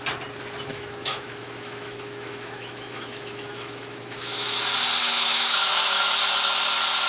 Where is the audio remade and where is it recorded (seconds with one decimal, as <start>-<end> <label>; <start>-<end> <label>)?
0.0-0.7 recorded; 0.7-4.6 remade; 4.6-5.0 recorded; 5.0-6.1 remade; 6.1-7.1 recorded